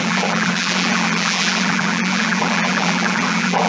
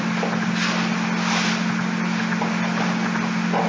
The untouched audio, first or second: second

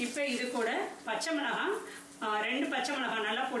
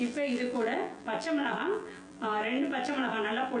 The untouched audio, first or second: first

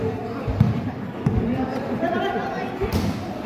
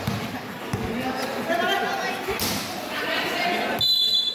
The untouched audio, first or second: second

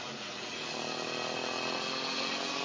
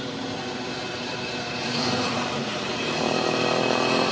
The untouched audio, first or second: first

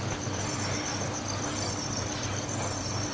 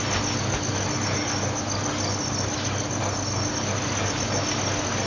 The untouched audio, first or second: second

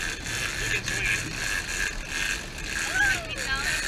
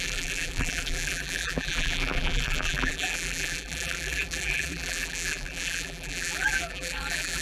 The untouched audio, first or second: first